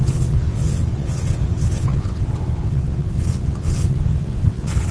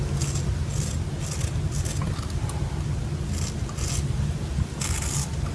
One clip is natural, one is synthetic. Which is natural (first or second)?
second